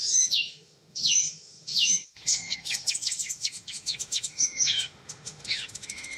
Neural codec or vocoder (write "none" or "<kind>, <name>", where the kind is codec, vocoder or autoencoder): autoencoder, DAC-VAE